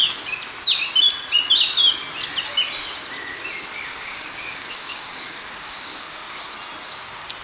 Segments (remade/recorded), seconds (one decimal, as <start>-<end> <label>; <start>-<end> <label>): 0.0-3.9 recorded; 3.9-6.4 remade; 6.4-7.4 recorded

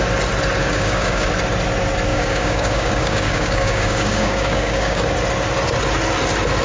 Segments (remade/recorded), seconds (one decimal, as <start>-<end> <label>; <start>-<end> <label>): 0.0-0.6 recorded; 0.6-1.3 remade; 1.3-2.1 recorded; 2.1-5.0 remade; 5.0-6.6 recorded

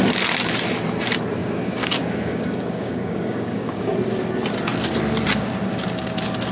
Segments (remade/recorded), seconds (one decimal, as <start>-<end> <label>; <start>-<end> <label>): 0.0-1.4 recorded; 1.4-3.9 remade; 3.9-6.5 recorded

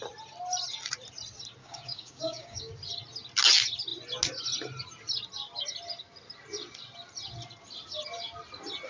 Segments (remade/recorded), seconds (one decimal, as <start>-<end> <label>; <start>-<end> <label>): 0.0-1.6 recorded; 1.6-2.7 remade; 2.7-8.9 recorded

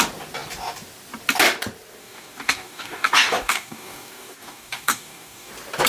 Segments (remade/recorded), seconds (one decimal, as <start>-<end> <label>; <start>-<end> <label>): 0.0-2.0 recorded; 2.0-5.5 remade; 5.5-5.9 recorded